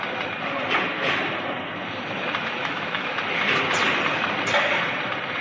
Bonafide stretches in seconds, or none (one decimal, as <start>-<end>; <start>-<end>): 0.0-2.6; 3.2-5.4